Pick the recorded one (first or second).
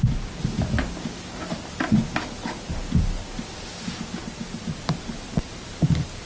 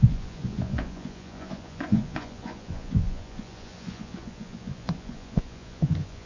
first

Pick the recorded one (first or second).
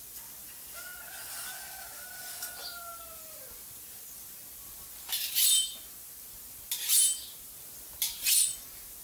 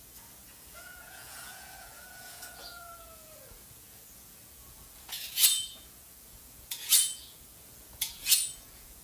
first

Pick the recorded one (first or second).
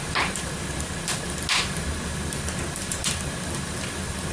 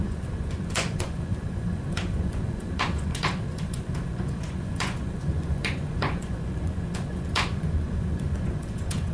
first